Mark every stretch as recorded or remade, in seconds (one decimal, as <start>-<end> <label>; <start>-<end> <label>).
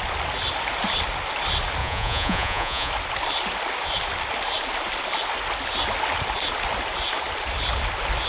0.0-1.8 recorded; 1.8-2.9 remade; 2.9-8.3 recorded